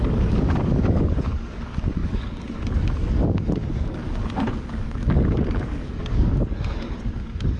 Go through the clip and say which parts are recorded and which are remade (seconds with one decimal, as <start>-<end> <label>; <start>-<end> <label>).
0.0-7.6 remade